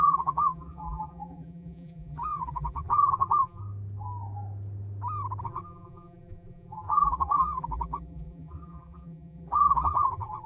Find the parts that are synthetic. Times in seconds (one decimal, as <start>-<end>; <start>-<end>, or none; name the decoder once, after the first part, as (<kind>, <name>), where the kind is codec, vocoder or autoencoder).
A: 0.0-3.6 (vocoder, BigVGAN v2); 5.4-10.5